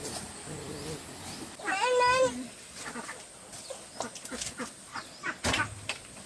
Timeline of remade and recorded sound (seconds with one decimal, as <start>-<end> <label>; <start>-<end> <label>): 0.0-4.9 recorded; 4.9-5.4 remade; 5.4-6.3 recorded